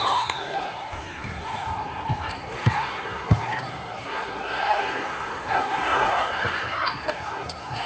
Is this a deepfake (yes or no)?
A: yes